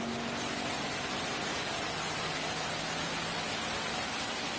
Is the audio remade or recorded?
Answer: recorded